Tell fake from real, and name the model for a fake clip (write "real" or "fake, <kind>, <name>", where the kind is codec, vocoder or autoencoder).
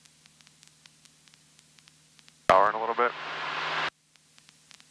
real